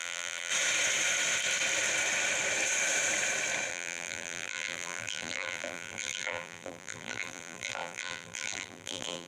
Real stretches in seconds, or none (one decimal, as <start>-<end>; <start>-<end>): 0.5-3.7